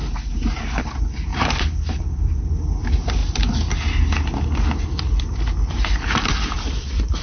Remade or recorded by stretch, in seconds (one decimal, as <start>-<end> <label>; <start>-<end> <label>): 0.0-0.8 recorded; 0.8-3.2 remade; 3.2-5.7 recorded; 5.7-7.2 remade